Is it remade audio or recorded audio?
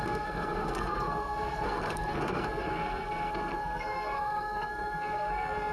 remade